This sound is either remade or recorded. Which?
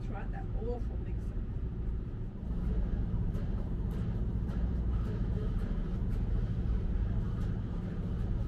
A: remade